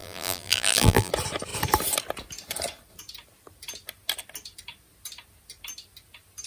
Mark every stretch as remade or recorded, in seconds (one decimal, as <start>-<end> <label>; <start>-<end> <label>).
0.0-1.1 remade; 1.1-6.5 recorded